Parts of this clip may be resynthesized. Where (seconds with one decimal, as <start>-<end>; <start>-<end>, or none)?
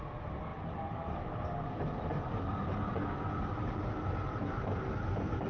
none